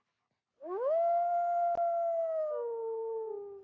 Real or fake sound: real